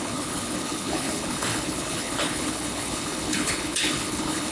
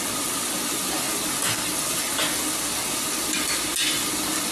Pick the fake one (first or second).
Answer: first